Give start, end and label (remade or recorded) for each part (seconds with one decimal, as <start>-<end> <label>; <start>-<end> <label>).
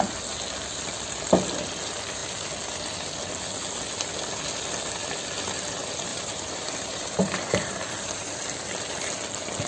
0.0-6.1 recorded; 6.1-8.3 remade; 8.3-9.7 recorded